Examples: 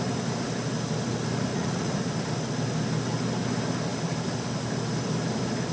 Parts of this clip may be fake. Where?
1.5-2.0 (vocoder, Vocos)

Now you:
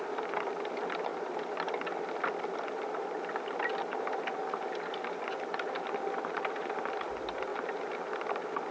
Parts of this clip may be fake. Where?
4.4-7.1 (vocoder, BigVGAN v2); 7.5-8.1

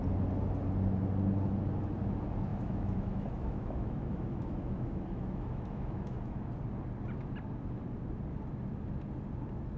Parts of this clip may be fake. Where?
2.5-6.4 (autoencoder, DAC-VAE)

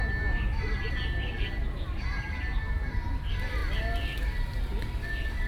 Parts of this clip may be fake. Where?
none

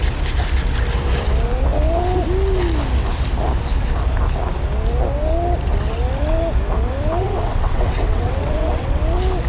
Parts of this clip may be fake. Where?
7.2-9.0 (vocoder, WaveNeXt)

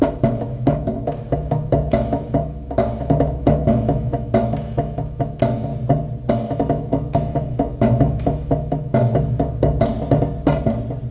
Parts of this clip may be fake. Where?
0.0-5.7 (autoencoder, DAC-VAE); 6.3-9.9

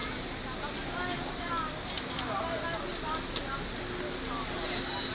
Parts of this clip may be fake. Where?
none

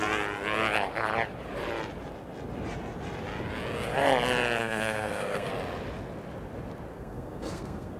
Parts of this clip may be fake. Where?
4.6-5.5 (codec, SNAC); 6.9-8.0